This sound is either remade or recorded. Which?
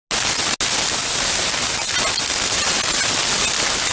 recorded